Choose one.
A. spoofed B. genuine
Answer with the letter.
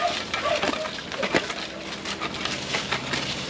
B